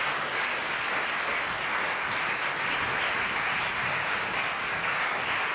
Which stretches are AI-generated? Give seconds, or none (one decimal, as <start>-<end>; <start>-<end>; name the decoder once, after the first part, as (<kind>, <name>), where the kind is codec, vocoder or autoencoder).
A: 0.0-0.9 (codec, DAC); 4.0-5.5